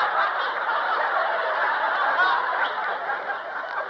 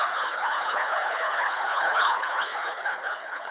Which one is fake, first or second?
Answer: second